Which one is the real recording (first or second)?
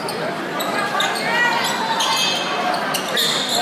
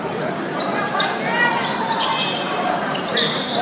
first